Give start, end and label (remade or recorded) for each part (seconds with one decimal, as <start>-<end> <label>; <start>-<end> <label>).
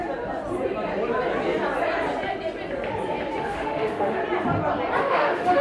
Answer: 0.0-3.4 recorded; 3.4-4.2 remade; 4.2-5.0 recorded; 5.0-5.6 remade